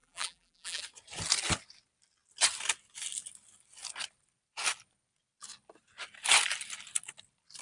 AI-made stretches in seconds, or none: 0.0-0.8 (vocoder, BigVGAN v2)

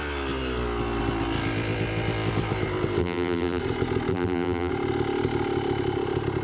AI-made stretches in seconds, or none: 3.0-3.6 (vocoder, BigVGAN v2); 4.1-4.7

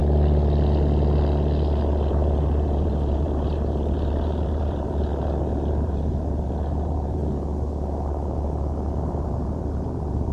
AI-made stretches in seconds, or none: 2.1-5.1 (vocoder, BigVGAN v2); 5.7-7.2; 9.0-10.3

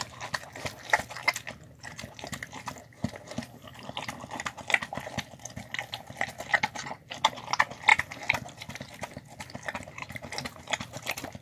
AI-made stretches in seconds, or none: none

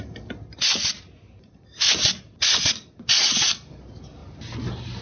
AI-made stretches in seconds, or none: 4.2-5.0 (vocoder, BigVGAN v2)

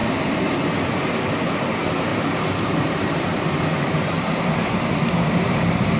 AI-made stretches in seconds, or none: 0.0-0.6 (vocoder, BigVGAN v2); 2.1-6.0

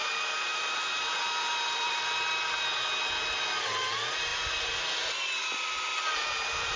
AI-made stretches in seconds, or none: none